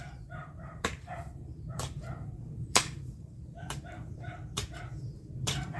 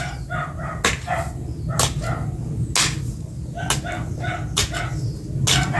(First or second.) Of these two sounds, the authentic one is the second